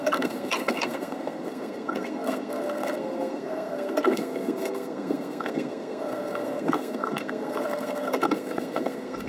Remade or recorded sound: remade